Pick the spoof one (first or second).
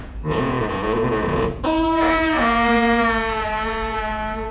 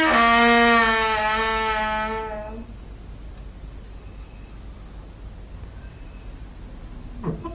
first